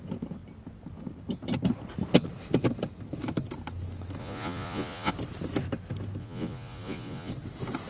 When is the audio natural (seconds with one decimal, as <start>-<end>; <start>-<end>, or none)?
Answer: 0.0-4.2; 5.1-6.2; 7.3-7.9